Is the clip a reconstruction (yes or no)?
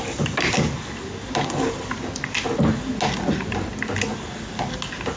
no